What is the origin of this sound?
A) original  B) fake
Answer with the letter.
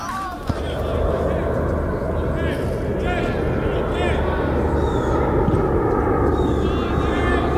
A